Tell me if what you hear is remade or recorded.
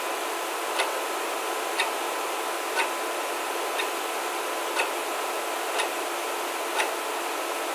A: recorded